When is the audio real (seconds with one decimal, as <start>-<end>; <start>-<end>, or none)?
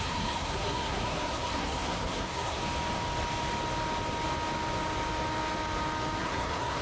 2.6-6.2